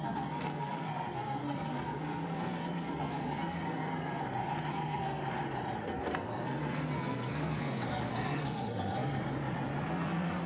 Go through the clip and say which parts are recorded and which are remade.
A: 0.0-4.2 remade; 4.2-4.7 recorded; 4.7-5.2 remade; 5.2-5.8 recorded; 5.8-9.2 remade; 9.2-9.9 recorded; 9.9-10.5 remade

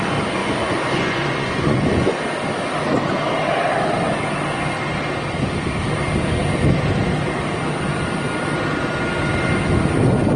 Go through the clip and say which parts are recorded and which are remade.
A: 0.0-0.4 recorded; 0.4-2.2 remade; 2.2-10.4 recorded

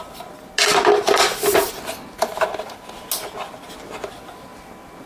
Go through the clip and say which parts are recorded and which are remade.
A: 0.0-5.1 recorded